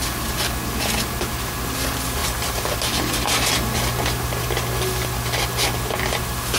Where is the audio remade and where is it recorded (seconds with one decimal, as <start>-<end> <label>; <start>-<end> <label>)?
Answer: 0.0-2.2 recorded; 2.2-3.0 remade; 3.0-6.6 recorded